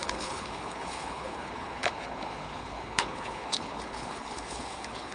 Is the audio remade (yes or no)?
yes